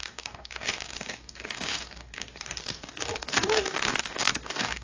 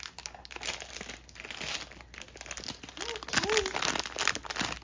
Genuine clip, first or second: second